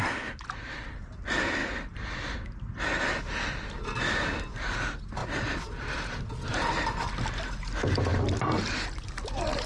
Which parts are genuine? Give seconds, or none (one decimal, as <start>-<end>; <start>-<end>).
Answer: 0.0-5.2; 7.4-8.1